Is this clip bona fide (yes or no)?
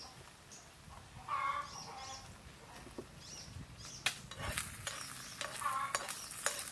yes